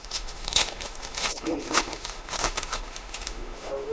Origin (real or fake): fake